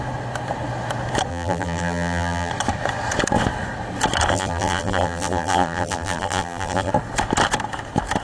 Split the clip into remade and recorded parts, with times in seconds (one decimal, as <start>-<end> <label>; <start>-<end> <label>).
0.0-1.3 recorded; 1.3-2.5 remade; 2.5-4.3 recorded; 4.3-6.9 remade; 6.9-8.2 recorded